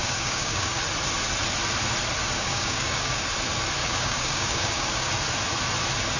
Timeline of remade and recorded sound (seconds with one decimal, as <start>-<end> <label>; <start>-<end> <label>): 0.0-0.8 remade; 0.8-2.2 recorded; 2.2-3.2 remade; 3.2-3.8 recorded; 3.8-5.1 remade; 5.1-6.2 recorded